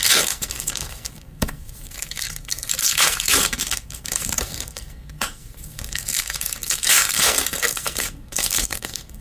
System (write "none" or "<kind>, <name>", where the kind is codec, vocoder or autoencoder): codec, SNAC